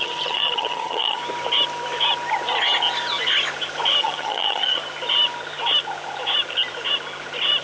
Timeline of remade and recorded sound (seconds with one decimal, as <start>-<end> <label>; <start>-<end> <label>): 0.0-1.2 remade; 1.2-4.0 recorded; 4.0-4.8 remade; 4.8-7.6 recorded